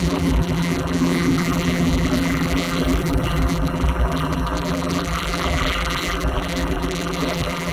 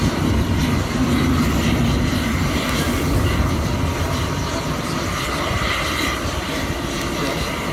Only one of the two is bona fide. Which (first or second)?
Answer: second